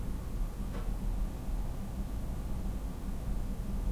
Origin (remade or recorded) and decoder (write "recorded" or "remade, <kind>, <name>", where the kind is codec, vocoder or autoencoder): recorded